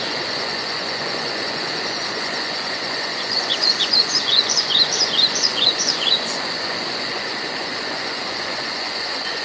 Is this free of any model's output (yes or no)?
no